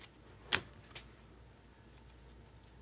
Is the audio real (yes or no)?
yes